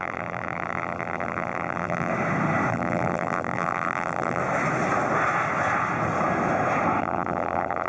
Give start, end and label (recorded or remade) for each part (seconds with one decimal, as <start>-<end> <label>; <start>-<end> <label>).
0.0-2.1 remade; 2.1-2.7 recorded; 2.7-4.4 remade; 4.4-7.0 recorded; 7.0-7.9 remade